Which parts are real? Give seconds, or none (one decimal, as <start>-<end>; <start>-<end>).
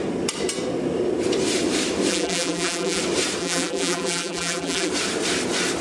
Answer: 0.0-2.1; 3.0-3.4; 4.9-5.8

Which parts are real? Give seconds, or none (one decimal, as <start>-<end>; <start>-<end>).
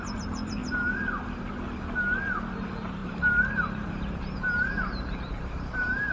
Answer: 0.6-2.6